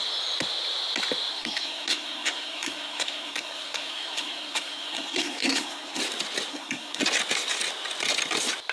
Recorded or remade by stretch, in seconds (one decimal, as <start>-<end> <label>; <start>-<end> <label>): 0.0-1.3 recorded; 1.3-6.0 remade; 6.0-6.5 recorded; 6.5-7.0 remade; 7.0-8.7 recorded